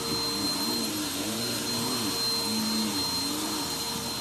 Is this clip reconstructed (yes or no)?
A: no